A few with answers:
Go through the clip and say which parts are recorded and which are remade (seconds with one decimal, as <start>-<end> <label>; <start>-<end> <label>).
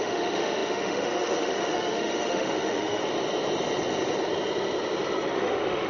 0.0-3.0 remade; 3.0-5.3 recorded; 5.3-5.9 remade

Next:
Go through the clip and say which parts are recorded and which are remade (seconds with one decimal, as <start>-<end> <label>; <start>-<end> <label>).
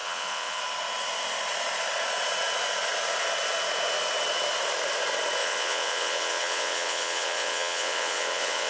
0.0-0.6 remade; 0.6-5.4 recorded; 5.4-8.7 remade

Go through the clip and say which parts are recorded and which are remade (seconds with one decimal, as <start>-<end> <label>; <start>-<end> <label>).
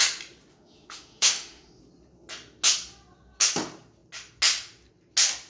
0.0-0.5 recorded; 0.5-1.8 remade; 1.8-5.5 recorded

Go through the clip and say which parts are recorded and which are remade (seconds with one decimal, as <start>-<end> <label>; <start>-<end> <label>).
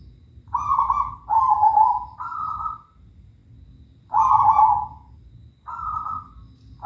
0.0-6.9 recorded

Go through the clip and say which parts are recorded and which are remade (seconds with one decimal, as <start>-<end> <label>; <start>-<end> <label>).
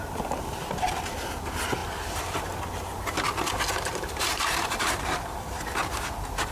0.0-1.8 recorded; 1.8-2.4 remade; 2.4-3.9 recorded; 3.9-5.5 remade; 5.5-6.5 recorded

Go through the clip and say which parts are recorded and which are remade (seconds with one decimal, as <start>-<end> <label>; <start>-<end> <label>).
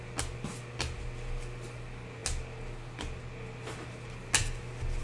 0.0-5.0 recorded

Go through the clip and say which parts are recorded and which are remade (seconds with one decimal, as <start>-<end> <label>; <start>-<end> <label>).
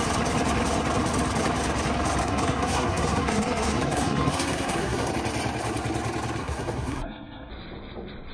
0.0-2.2 recorded; 2.2-5.1 remade; 5.1-6.4 recorded; 6.4-7.5 remade; 7.5-8.3 recorded